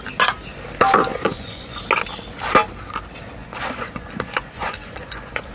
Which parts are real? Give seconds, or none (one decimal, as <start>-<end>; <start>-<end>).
0.0-1.1; 1.8-3.4